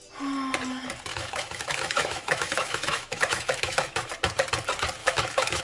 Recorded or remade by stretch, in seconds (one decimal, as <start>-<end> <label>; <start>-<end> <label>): 0.0-1.1 recorded; 1.1-4.1 remade; 4.1-5.0 recorded; 5.0-5.6 remade